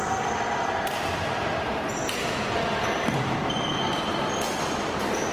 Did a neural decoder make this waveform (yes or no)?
no